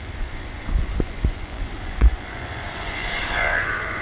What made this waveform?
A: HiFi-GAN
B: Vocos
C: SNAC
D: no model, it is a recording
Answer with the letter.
B